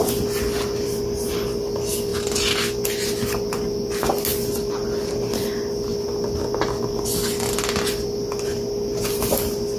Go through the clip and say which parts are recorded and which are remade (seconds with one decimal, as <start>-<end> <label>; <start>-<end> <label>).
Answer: 0.0-9.8 recorded